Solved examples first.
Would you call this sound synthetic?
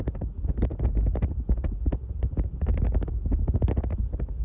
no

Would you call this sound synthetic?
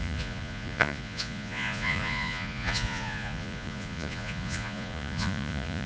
yes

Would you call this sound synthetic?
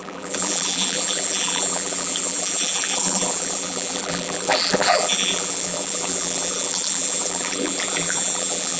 yes